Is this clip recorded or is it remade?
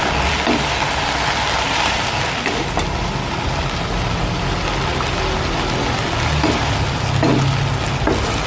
recorded